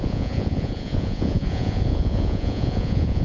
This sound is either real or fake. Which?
fake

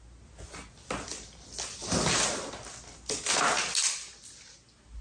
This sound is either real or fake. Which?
real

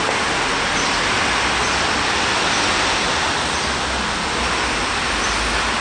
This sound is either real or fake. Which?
real